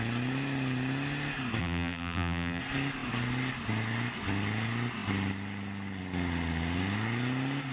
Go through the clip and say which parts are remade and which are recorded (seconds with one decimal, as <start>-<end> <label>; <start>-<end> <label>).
0.0-1.6 recorded; 1.6-2.6 remade; 2.6-7.7 recorded